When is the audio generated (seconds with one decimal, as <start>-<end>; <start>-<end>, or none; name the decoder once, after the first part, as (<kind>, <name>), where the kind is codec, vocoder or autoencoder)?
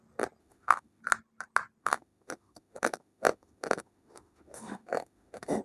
0.4-1.0 (autoencoder, DAC-VAE); 1.8-5.6